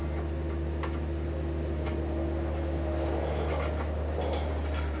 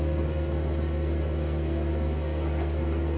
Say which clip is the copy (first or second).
second